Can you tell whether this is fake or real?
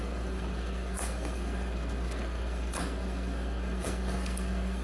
fake